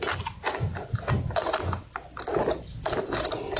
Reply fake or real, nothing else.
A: real